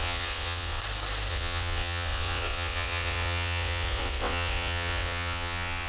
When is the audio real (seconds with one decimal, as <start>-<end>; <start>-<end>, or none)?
0.8-1.3